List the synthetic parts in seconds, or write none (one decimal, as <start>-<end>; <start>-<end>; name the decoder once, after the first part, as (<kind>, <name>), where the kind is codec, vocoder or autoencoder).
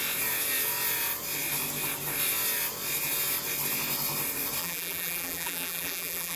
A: 4.6-6.4 (vocoder, BigVGAN v2)